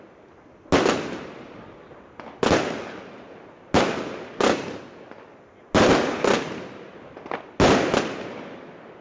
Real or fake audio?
real